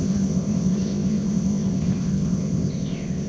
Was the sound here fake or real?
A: fake